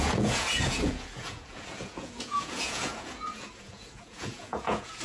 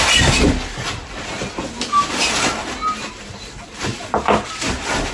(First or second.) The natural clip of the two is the second